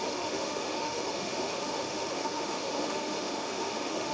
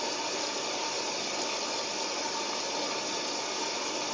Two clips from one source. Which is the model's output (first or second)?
first